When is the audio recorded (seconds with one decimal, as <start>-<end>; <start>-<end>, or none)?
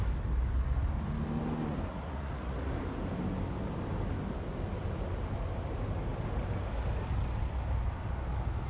0.0-1.9; 2.7-8.7